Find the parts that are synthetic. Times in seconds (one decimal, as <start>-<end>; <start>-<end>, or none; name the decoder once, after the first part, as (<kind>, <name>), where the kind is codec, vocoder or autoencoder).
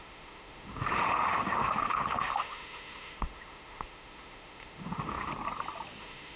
0.0-5.3 (autoencoder, DAC-VAE); 6.0-6.4